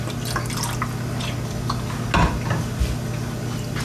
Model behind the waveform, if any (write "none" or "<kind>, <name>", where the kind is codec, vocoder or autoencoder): none